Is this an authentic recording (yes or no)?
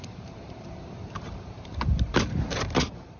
no